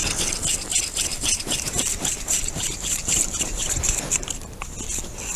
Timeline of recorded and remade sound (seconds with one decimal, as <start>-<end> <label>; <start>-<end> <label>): 0.0-1.1 recorded; 1.1-4.3 remade; 4.3-5.4 recorded